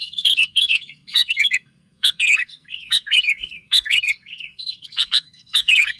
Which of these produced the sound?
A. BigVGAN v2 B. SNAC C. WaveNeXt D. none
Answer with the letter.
B